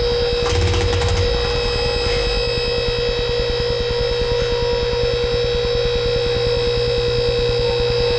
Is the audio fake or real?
real